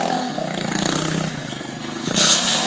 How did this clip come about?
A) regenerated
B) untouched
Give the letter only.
A